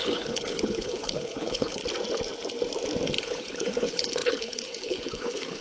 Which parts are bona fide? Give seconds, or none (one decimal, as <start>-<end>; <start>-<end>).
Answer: 1.8-3.2